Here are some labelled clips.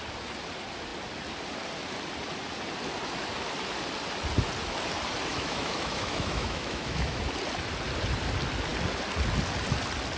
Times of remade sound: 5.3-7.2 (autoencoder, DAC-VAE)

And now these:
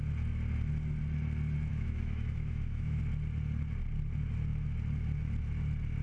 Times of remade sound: 1.7-3.0 (autoencoder, DAC-VAE)

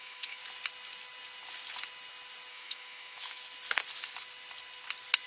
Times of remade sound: 0.0-0.4 (autoencoder, DAC-VAE); 2.5-3.4

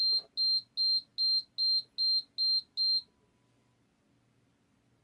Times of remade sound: none

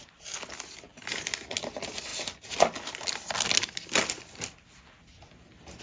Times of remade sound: none

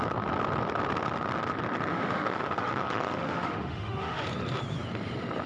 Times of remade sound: 1.9-4.2 (autoencoder, DAC-VAE)